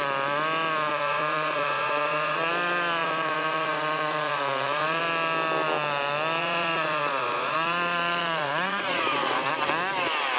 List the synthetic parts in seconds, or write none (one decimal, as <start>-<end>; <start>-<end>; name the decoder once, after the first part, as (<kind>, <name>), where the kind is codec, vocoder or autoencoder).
0.9-2.5 (vocoder, Vocos); 3.0-5.0; 6.4-9.5